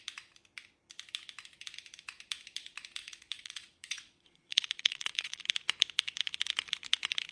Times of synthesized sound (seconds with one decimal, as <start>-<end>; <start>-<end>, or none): 3.0-5.4